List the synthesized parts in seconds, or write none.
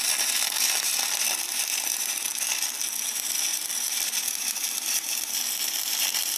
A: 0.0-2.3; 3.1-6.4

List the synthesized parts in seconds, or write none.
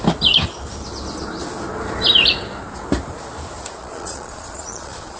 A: 3.8-5.2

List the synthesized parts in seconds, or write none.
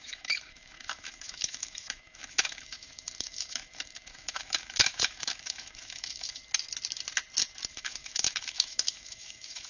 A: 0.0-6.4; 7.7-9.7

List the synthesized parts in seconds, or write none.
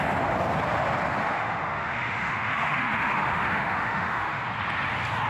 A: 1.2-4.4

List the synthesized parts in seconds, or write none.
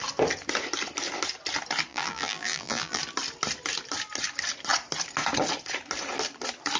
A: 1.9-3.0